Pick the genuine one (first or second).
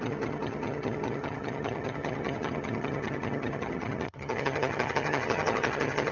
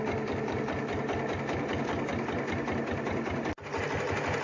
second